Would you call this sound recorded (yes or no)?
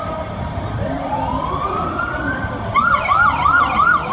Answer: no